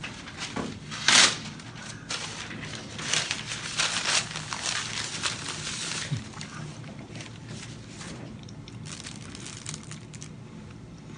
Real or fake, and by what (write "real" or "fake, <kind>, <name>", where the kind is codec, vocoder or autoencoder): real